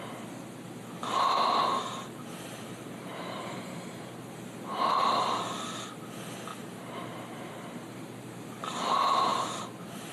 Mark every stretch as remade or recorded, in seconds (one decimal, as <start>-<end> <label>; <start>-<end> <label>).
0.0-2.5 recorded; 2.5-4.9 remade; 4.9-6.5 recorded; 6.5-8.6 remade; 8.6-9.3 recorded; 9.3-10.1 remade